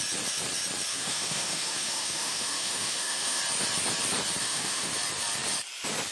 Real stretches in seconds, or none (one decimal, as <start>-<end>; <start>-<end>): 0.0-0.9; 3.4-4.4; 4.9-6.1